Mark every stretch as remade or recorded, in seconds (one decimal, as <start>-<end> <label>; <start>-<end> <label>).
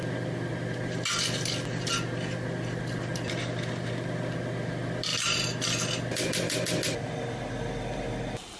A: 0.0-8.6 recorded